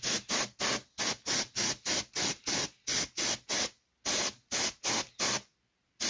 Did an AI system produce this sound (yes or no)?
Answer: no